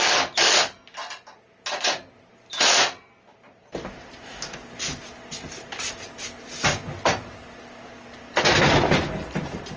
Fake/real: real